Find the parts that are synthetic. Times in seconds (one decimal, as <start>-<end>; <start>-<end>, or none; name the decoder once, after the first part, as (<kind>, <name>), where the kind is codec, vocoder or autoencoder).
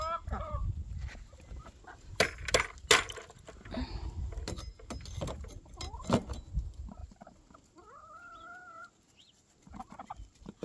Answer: none